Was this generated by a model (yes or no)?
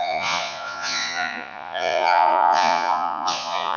yes